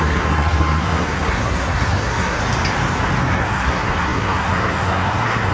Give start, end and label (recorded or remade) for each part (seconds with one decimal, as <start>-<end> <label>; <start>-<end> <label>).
0.0-2.4 remade; 2.4-3.2 recorded; 3.2-5.5 remade